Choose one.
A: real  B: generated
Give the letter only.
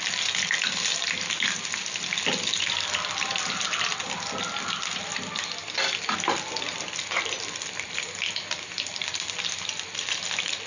B